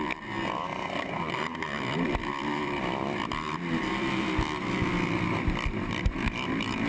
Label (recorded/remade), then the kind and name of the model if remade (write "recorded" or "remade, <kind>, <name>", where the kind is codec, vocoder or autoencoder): remade, vocoder, BigVGAN v2